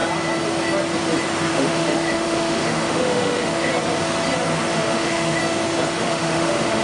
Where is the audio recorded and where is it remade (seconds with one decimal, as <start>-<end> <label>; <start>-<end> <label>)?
0.0-1.5 recorded; 1.5-3.7 remade; 3.7-4.7 recorded; 4.7-5.4 remade; 5.4-6.0 recorded; 6.0-6.8 remade